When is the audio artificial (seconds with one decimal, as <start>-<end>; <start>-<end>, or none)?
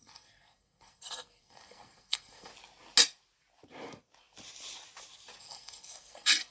0.0-2.5; 5.4-6.5